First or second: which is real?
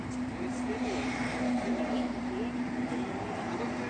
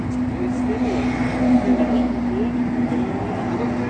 second